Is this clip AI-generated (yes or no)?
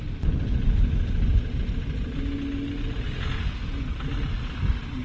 no